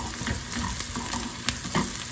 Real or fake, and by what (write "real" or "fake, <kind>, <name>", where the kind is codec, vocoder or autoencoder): real